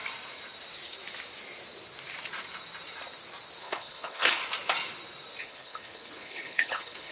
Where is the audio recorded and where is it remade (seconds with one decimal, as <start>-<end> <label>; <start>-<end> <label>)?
0.0-3.6 recorded; 3.6-4.4 remade; 4.4-5.4 recorded; 5.4-7.1 remade